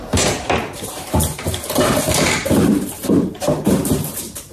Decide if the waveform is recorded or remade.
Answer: remade